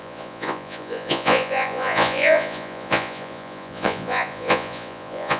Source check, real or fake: fake